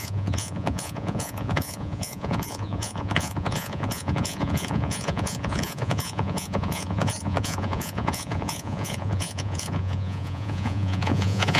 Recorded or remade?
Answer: remade